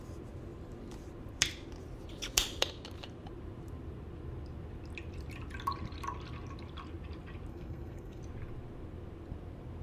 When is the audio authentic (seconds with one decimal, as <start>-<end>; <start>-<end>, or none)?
0.0-7.5; 8.2-9.8

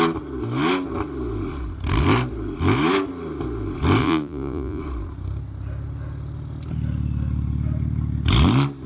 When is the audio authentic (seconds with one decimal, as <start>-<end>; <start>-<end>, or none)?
0.0-4.0; 4.8-8.9

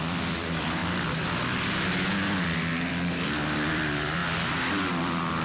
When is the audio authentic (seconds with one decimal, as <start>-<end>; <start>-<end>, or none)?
4.2-5.0

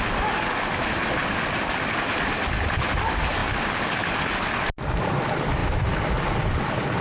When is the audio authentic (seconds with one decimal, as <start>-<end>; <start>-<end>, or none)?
0.0-7.0